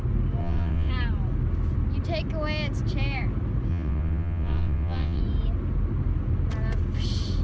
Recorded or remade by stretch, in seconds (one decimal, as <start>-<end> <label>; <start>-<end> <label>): 0.0-0.4 recorded; 0.4-0.9 remade; 0.9-3.7 recorded; 3.7-5.2 remade; 5.2-7.4 recorded